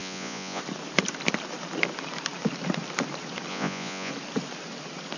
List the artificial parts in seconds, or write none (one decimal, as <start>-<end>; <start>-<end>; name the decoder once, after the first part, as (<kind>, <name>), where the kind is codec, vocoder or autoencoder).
0.0-0.6 (vocoder, Vocos); 3.5-4.1